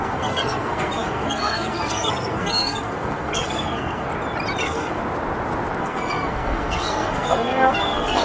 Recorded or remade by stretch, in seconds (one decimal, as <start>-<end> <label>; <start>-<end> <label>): 0.0-4.1 remade; 4.1-4.6 recorded; 4.6-5.0 remade; 5.0-5.8 recorded; 5.8-8.2 remade